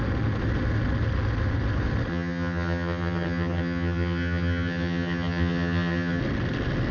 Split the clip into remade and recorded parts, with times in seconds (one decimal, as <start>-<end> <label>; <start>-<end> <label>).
0.0-2.1 recorded; 2.1-6.2 remade; 6.2-6.9 recorded